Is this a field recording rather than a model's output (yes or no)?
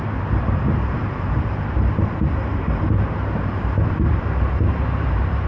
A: no